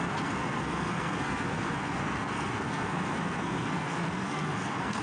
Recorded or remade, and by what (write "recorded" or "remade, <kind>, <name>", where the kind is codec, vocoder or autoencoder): remade, codec, SNAC